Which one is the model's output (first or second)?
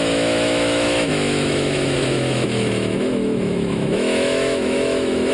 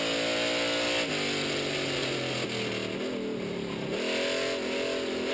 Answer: first